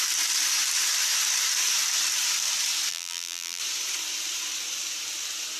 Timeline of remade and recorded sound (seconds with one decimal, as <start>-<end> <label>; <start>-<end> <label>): 0.0-2.9 recorded; 2.9-3.6 remade; 3.6-5.6 recorded